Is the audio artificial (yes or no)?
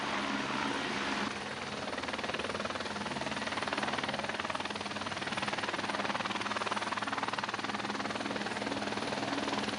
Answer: no